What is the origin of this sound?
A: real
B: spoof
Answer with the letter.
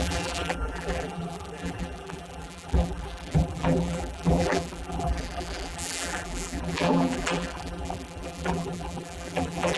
B